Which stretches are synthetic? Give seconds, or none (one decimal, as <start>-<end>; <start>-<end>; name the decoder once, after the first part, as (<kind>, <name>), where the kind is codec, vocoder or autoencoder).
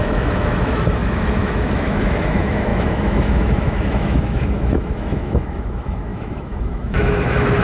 0.0-7.6 (autoencoder, DAC-VAE)